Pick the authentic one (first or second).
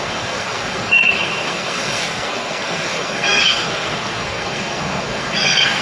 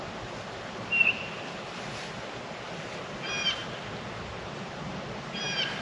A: second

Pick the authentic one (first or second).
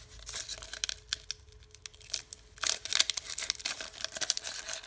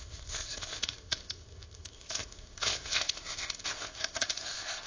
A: first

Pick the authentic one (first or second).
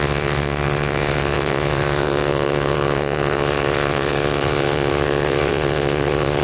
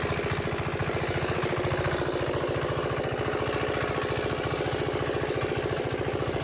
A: second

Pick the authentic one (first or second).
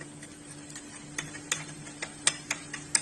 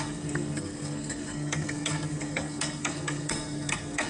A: first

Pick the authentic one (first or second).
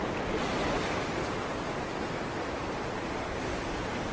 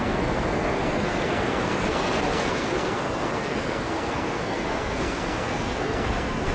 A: first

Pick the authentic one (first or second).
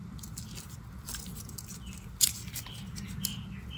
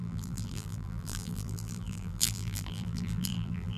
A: first